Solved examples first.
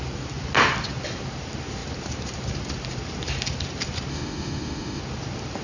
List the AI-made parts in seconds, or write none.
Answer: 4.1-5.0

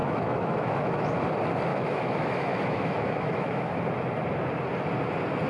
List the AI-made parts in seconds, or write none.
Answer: 0.0-1.2; 1.7-3.8

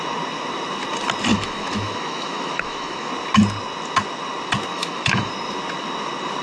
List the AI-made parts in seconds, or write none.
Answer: 1.3-3.1; 4.7-5.3

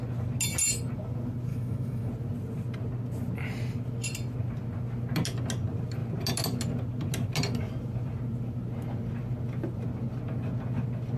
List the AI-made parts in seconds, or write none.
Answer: 1.5-2.1